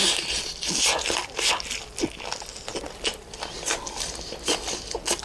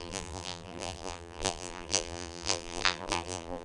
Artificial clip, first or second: second